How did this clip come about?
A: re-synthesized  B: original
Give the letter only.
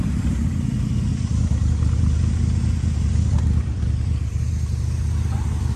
B